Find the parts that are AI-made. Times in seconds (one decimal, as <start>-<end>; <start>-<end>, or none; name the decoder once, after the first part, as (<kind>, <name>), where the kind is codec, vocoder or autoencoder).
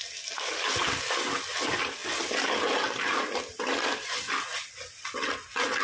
none